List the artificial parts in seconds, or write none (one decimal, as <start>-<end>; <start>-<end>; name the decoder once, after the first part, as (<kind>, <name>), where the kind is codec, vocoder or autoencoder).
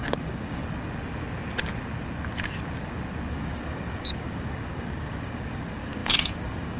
0.0-0.6 (codec, DAC); 3.3-6.8